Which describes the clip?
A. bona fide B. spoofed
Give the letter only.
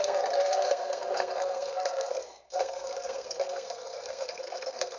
B